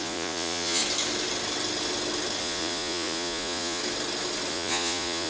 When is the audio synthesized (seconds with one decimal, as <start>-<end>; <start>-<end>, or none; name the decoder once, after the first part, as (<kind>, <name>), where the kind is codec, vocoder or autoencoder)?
0.0-0.8 (vocoder, Vocos); 2.4-3.8; 4.5-5.3